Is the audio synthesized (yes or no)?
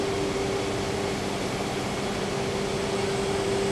no